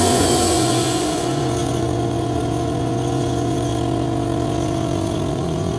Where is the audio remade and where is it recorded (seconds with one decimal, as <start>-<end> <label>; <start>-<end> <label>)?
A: 0.0-3.7 remade; 3.7-5.3 recorded; 5.3-5.8 remade